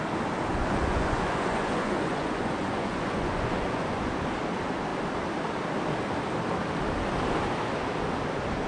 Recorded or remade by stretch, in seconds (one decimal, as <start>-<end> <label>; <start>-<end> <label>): 0.0-0.5 recorded; 0.5-4.1 remade; 4.1-8.7 recorded